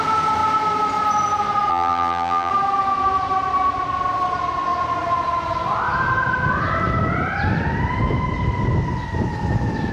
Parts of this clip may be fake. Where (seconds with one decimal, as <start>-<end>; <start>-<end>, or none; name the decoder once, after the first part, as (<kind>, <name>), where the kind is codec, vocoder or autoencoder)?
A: 1.7-2.5 (vocoder, BigVGAN v2)